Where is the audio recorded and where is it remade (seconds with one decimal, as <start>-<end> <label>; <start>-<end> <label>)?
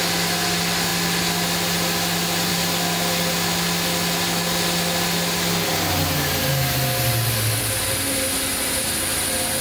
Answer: 0.0-9.6 recorded